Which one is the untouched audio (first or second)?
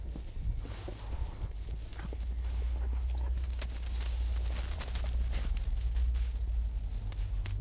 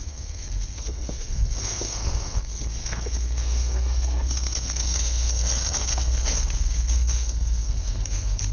first